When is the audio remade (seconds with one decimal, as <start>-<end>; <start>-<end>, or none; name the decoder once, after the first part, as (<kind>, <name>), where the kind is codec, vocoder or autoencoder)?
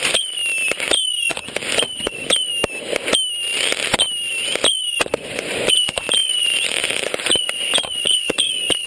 0.0-0.4 (vocoder, Vocos); 1.3-2.5; 5.1-8.9